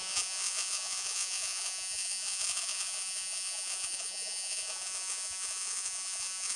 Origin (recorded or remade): remade